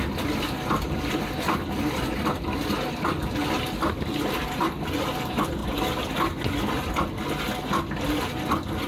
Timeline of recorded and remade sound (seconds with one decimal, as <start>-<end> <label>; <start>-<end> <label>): 0.0-8.9 recorded